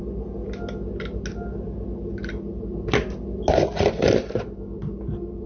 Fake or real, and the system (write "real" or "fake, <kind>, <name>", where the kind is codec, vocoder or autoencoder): real